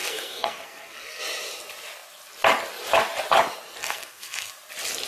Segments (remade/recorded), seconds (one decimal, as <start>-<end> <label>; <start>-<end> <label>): 0.0-1.2 remade; 1.2-3.8 recorded; 3.8-4.5 remade; 4.5-5.1 recorded